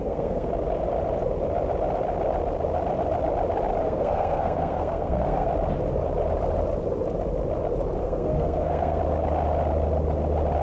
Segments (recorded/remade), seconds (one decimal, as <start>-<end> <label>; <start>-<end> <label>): 0.0-0.5 remade; 0.5-3.8 recorded; 3.8-5.5 remade; 5.5-8.0 recorded; 8.0-9.0 remade; 9.0-10.6 recorded